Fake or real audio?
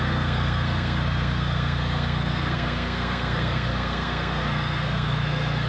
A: fake